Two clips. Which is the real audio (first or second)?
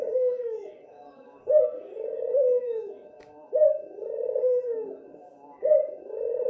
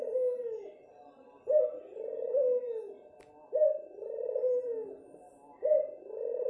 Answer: second